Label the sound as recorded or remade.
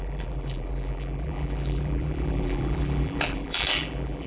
remade